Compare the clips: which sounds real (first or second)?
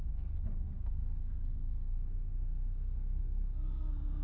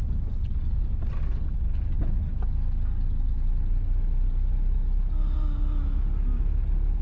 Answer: second